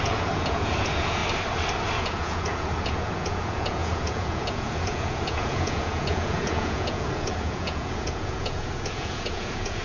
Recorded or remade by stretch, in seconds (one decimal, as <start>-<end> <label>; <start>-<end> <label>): 0.0-1.2 remade; 1.2-2.0 recorded; 2.0-9.8 remade